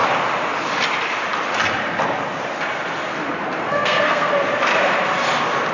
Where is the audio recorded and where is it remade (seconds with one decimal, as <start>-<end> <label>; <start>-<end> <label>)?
0.0-3.6 recorded; 3.6-4.3 remade; 4.3-5.7 recorded